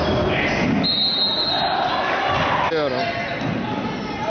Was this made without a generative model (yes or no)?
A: yes